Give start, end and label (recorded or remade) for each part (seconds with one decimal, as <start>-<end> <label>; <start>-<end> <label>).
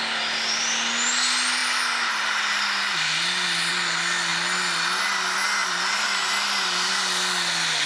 0.0-7.9 recorded